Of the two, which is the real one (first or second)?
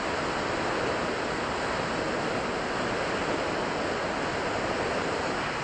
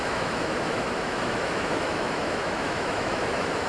first